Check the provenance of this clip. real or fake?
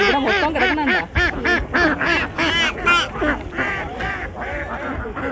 real